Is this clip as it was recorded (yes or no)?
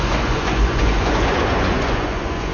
no